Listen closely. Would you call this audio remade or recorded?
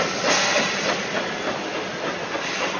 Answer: recorded